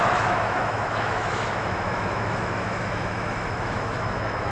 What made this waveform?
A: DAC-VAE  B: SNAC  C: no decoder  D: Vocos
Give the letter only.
A